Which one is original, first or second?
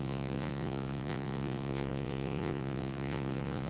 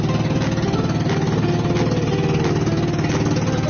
second